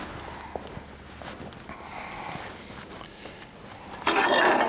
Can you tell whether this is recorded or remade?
recorded